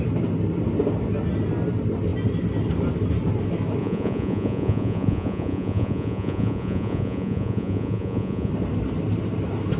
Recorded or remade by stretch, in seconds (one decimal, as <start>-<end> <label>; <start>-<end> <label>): 0.0-3.8 recorded; 3.8-8.5 remade; 8.5-9.8 recorded